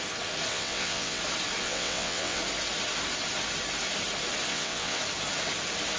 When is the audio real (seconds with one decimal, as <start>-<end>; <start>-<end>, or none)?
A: 0.0-0.5; 1.2-1.6; 2.4-4.5; 5.0-6.0

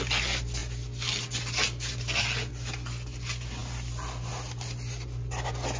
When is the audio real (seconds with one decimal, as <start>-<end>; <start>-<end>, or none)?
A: 0.0-5.8